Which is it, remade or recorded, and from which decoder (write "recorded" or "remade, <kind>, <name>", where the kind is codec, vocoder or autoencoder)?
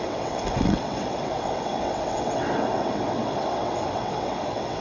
remade, vocoder, WaveNeXt